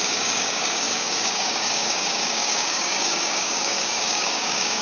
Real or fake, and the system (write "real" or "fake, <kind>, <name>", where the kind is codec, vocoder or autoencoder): fake, codec, DAC